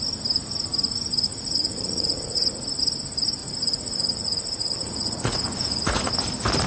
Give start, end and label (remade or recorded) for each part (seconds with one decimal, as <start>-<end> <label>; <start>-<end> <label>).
0.0-1.3 recorded; 1.3-2.8 remade; 2.8-3.4 recorded; 3.4-6.1 remade; 6.1-6.7 recorded